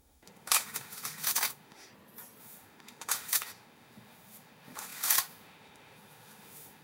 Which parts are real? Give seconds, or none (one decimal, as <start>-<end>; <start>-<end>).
1.9-2.4